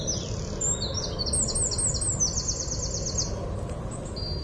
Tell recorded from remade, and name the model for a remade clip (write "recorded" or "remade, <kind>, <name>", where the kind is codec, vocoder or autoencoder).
recorded